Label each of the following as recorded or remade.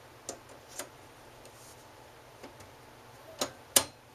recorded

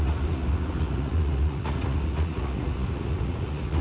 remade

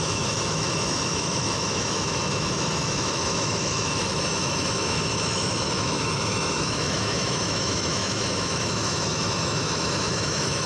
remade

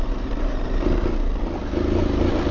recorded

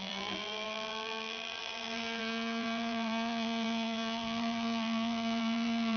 remade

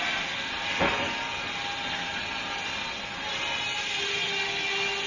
recorded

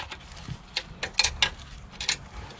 recorded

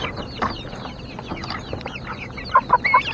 recorded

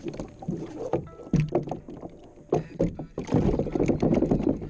recorded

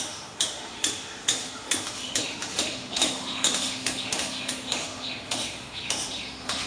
remade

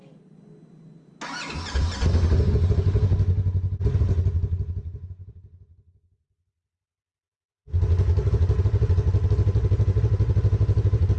recorded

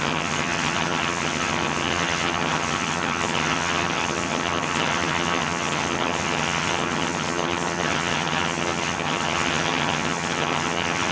remade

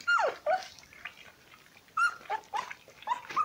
recorded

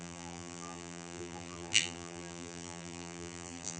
remade